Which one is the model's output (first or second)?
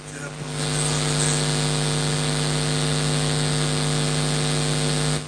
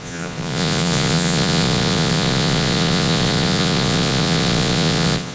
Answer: second